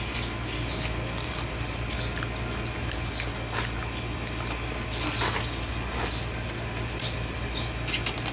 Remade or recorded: recorded